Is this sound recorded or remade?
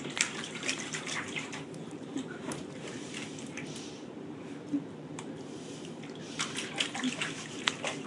remade